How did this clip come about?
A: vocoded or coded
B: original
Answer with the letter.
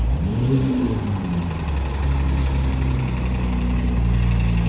B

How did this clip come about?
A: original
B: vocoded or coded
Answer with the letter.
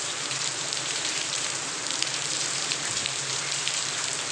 B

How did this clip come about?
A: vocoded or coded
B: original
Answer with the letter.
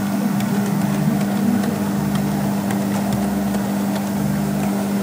B